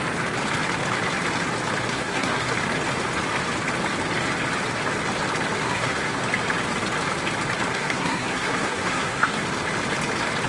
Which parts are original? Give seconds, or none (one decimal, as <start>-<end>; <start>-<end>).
0.0-1.9; 2.5-5.6; 6.2-7.7; 9.4-10.5

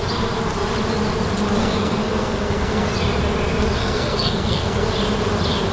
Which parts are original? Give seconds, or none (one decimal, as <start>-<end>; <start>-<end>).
0.0-1.6; 2.9-3.8; 4.9-5.7

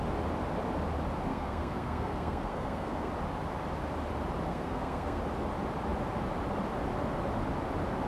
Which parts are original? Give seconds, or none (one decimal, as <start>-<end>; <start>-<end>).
0.0-1.3; 3.1-4.5; 5.2-8.1

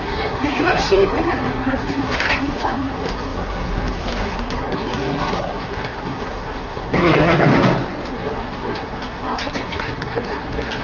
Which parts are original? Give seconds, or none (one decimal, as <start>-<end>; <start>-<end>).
7.5-8.1